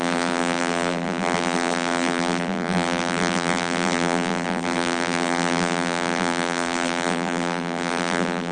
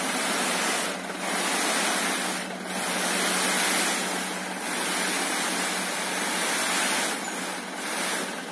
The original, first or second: second